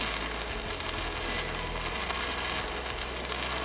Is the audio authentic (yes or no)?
yes